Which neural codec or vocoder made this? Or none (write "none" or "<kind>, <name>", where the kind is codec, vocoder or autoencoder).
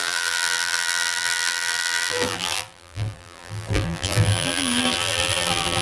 vocoder, BigVGAN v2